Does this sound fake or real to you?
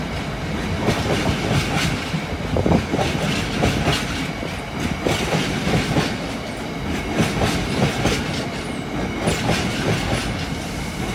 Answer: real